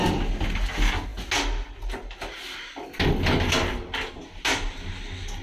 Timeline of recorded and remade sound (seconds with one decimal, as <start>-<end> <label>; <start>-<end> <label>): 0.0-5.4 recorded